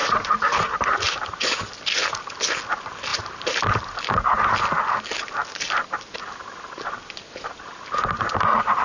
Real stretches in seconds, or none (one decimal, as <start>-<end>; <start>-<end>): 1.8-3.1; 3.9-8.8